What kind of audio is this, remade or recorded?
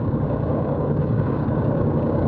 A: remade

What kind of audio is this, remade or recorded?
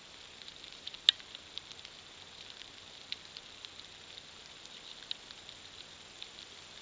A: recorded